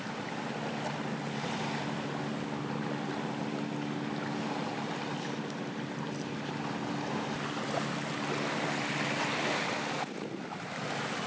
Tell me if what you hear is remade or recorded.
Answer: recorded